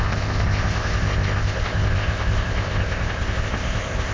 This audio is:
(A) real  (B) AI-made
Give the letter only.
B